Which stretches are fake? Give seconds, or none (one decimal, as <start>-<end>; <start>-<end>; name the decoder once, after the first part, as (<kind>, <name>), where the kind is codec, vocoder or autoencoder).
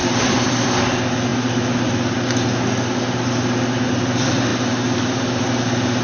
0.0-0.8 (vocoder, BigVGAN v2)